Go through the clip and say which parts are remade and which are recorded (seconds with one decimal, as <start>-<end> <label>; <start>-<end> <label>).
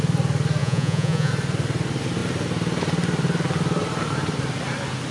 0.0-0.6 recorded; 0.6-1.3 remade; 1.3-5.1 recorded